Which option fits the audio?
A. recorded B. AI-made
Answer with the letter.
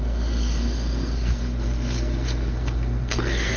B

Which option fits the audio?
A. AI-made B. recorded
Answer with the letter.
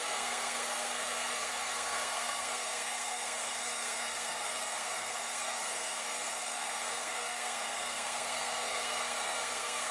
A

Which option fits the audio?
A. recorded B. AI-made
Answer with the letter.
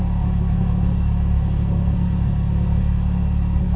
B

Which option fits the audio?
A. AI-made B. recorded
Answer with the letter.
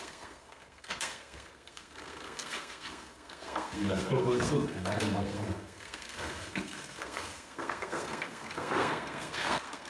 A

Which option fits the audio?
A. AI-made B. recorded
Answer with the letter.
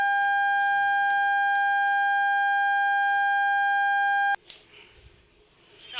B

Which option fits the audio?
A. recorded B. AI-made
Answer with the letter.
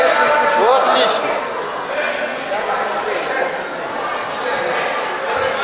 A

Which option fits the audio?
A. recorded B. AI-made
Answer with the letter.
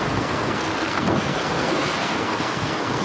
B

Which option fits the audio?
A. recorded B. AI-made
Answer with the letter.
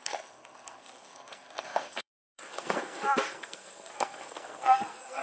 B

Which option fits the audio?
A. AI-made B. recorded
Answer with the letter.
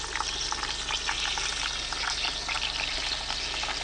B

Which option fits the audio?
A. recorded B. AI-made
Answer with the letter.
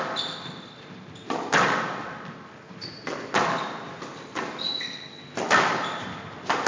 A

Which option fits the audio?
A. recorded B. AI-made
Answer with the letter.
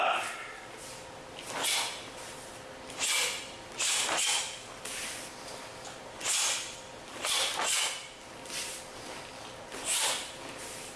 A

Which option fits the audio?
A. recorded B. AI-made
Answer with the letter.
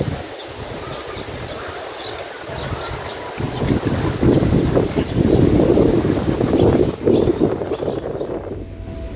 A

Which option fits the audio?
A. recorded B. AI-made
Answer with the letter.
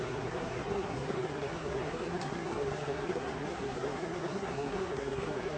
B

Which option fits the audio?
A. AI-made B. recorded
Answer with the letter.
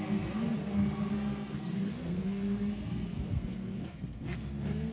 A